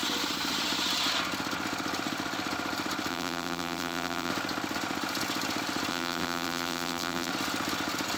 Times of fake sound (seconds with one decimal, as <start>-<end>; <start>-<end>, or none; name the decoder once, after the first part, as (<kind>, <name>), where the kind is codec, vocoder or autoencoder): 3.1-4.3 (vocoder, BigVGAN v2); 5.9-7.3